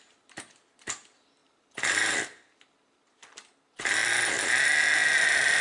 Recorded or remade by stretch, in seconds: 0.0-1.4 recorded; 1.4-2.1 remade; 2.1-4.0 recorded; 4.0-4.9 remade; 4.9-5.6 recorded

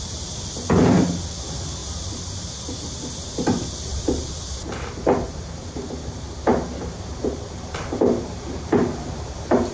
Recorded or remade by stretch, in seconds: 0.0-1.8 recorded; 1.8-2.5 remade; 2.5-3.9 recorded; 3.9-5.6 remade; 5.6-6.5 recorded; 6.5-9.7 remade

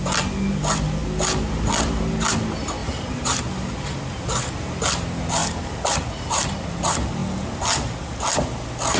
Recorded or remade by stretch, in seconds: 0.0-2.8 recorded; 2.8-3.4 remade; 3.4-9.0 recorded

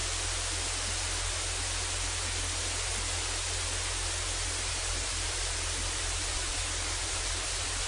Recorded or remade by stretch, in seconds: 0.0-4.7 recorded; 4.7-7.9 remade